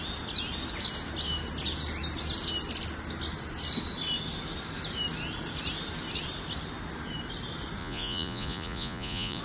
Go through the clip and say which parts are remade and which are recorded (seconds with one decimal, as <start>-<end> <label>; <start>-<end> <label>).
0.0-7.8 recorded; 7.8-9.4 remade